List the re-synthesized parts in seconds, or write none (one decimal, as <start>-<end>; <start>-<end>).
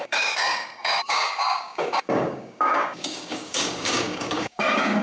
0.0-5.0